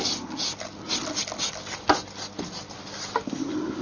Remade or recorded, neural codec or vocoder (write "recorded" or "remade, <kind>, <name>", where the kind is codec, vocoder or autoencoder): recorded